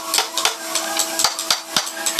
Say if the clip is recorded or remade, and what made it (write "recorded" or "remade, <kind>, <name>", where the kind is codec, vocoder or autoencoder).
recorded